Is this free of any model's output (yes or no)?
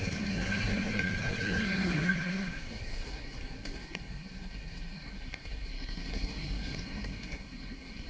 no